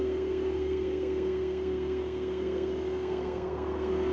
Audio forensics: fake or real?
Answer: fake